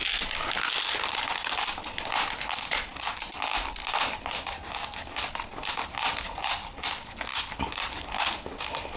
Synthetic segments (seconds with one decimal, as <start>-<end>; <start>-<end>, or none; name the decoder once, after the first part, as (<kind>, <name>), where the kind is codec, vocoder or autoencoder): none